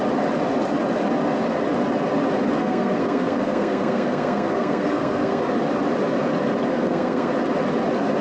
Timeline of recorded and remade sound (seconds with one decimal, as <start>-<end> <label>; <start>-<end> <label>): 0.0-2.6 recorded; 2.6-5.4 remade; 5.4-6.7 recorded; 6.7-7.3 remade; 7.3-8.2 recorded